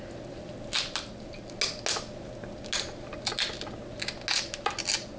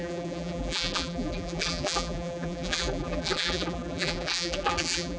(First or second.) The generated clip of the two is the second